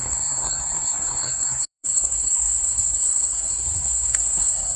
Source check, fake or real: fake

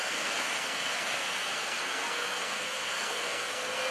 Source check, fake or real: fake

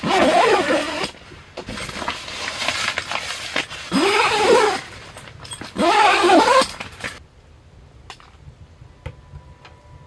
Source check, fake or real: real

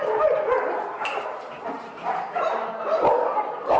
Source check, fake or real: real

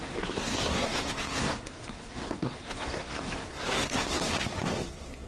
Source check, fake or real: fake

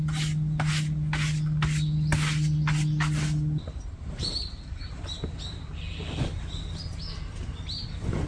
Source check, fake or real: real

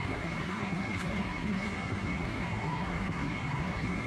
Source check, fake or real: fake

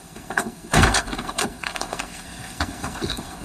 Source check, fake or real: fake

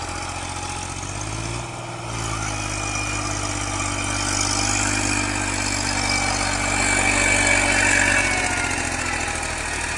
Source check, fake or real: real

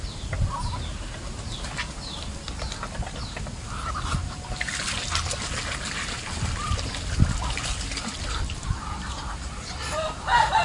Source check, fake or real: real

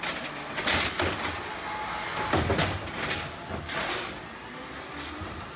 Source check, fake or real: real